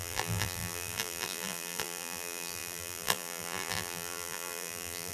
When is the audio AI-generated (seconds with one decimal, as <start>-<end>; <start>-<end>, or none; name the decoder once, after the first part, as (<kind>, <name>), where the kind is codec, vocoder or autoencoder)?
0.0-5.1 (vocoder, BigVGAN v2)